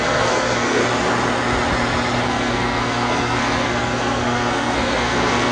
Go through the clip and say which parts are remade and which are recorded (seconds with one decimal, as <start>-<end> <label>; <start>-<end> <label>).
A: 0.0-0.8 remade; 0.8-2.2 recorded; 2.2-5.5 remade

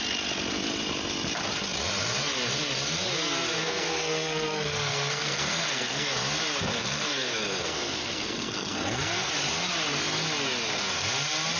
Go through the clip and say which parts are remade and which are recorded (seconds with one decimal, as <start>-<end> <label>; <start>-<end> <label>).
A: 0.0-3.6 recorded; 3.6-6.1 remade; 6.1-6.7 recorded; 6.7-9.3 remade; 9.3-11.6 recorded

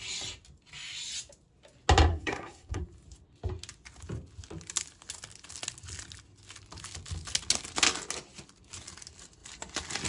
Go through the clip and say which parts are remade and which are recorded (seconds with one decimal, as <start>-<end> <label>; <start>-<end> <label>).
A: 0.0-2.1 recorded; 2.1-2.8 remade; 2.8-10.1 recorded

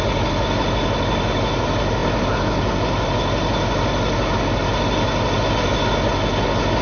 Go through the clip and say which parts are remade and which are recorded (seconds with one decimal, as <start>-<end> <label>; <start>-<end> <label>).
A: 0.0-6.8 recorded

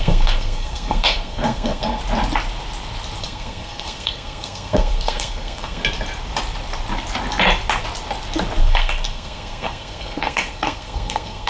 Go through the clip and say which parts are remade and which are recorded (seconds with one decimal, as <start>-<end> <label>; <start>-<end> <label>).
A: 0.0-2.0 remade; 2.0-3.2 recorded; 3.2-5.8 remade; 5.8-8.6 recorded; 8.6-11.5 remade